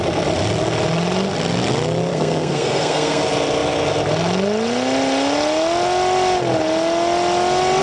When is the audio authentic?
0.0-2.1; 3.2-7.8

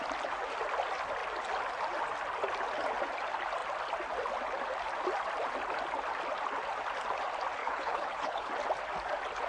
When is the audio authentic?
0.0-7.6; 8.5-9.5

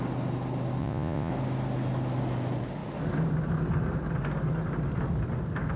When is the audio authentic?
0.0-0.8; 1.3-5.8

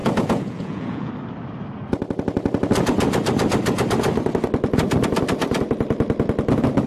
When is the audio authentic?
1.1-6.9

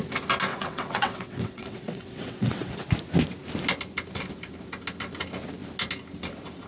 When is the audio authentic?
0.0-0.5; 2.7-6.7